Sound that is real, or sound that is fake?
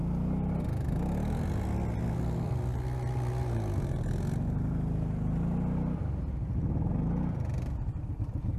real